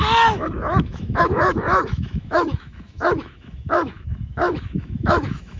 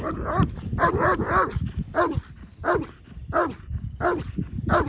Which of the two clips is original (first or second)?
second